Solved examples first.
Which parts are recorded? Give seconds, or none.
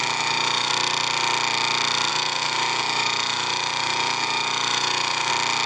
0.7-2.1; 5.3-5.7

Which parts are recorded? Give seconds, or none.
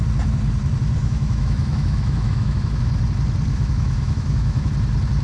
0.0-1.0; 2.9-3.5; 4.7-5.2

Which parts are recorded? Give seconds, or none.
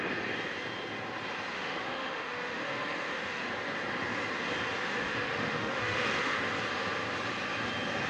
0.0-1.5; 3.5-4.9; 6.4-8.1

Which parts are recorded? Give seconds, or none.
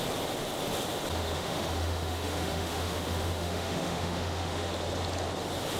0.0-1.2; 4.7-5.8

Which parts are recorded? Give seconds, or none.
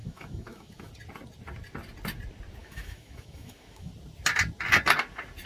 0.9-2.6; 3.9-5.5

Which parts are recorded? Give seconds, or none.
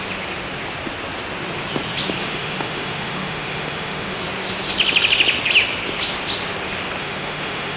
0.0-2.2; 4.2-7.0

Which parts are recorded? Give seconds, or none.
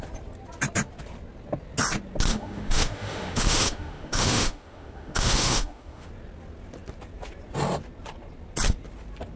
0.0-2.3; 6.1-9.4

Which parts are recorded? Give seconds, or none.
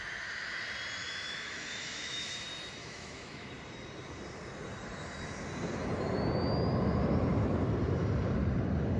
0.0-1.0; 2.4-2.8; 3.5-9.0